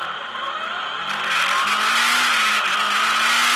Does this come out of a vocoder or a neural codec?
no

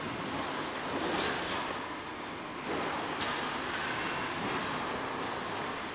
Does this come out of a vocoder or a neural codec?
no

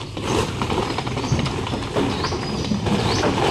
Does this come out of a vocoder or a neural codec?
no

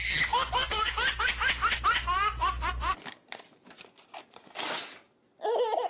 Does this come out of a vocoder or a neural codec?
no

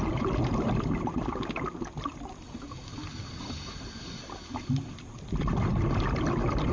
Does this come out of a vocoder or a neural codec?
no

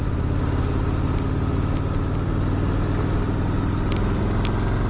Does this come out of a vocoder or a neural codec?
no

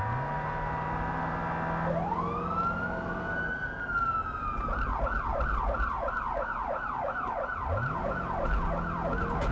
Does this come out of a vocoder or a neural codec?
no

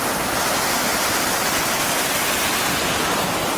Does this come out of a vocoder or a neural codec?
no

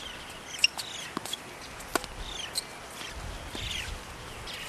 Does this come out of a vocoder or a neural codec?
no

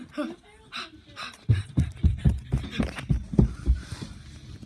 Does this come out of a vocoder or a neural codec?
no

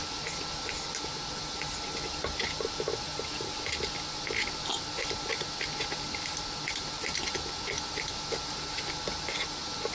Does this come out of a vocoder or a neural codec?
no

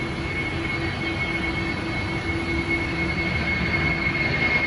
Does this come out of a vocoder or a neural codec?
no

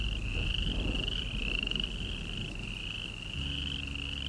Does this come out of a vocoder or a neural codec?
no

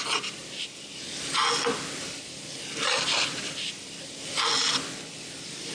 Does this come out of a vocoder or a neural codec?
no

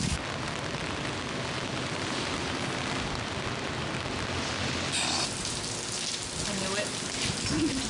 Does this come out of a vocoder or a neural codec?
no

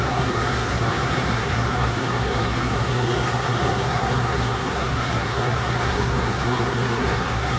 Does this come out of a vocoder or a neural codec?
yes